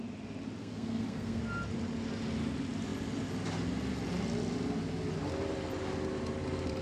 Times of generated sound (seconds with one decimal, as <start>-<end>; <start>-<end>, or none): 0.6-1.4